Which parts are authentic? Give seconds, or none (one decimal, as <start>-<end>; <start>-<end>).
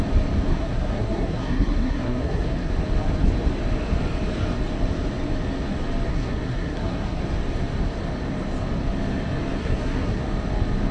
0.0-0.5; 2.7-6.1; 7.2-9.6; 10.2-10.9